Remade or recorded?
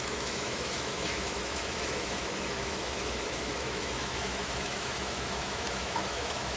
remade